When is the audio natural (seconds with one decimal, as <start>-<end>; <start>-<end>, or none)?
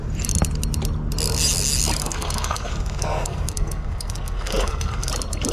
0.0-2.0; 5.1-5.5